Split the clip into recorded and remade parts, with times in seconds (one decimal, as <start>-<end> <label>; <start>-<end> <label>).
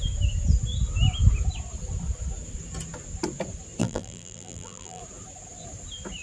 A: 0.0-3.8 recorded; 3.8-5.0 remade; 5.0-6.2 recorded